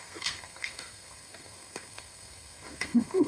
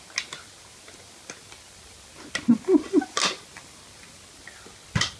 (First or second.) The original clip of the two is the second